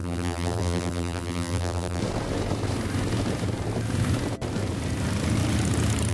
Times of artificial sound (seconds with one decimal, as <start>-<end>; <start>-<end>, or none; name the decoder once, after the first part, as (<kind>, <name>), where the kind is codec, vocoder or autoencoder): 0.0-2.0 (vocoder, BigVGAN v2)